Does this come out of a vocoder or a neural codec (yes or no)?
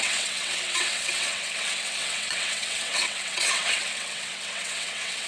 yes